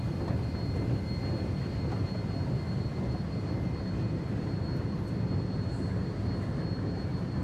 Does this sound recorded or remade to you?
recorded